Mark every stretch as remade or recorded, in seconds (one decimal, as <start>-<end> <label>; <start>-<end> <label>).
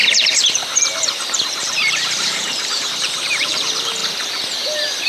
0.0-4.0 remade; 4.0-5.1 recorded